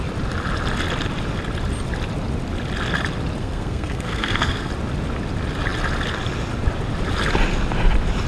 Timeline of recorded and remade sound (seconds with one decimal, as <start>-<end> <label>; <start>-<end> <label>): 0.0-3.4 recorded; 3.4-4.7 remade; 4.7-8.3 recorded